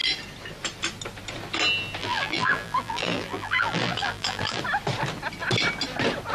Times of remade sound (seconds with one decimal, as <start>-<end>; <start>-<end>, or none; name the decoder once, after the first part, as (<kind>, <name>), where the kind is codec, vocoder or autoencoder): 2.0-4.6 (vocoder, BigVGAN v2)